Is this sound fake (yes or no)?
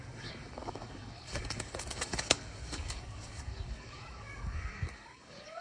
yes